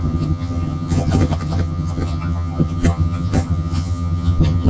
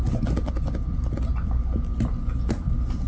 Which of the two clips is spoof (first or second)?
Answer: first